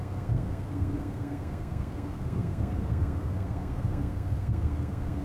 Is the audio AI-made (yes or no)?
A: yes